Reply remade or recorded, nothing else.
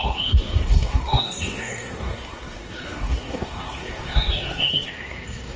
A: remade